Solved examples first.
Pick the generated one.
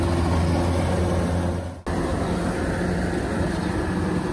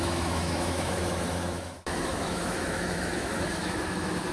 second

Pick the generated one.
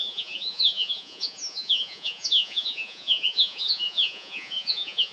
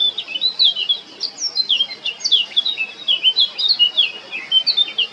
first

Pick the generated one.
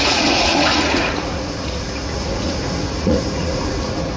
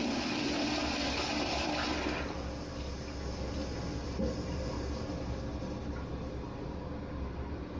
first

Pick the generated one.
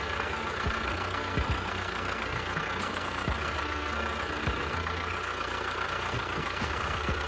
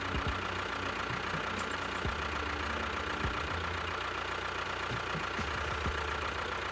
first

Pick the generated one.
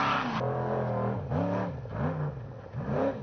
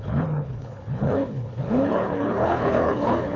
second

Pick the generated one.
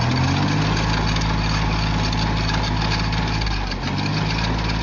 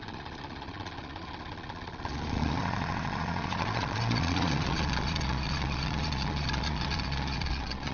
second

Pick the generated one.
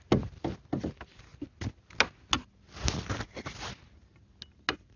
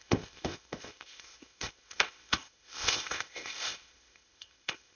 second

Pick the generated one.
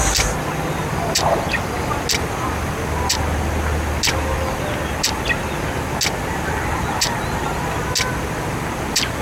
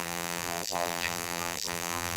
second